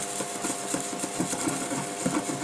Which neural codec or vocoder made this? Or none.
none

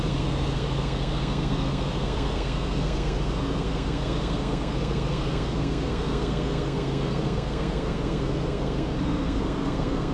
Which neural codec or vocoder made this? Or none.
codec, SNAC